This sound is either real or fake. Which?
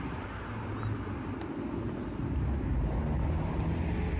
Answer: real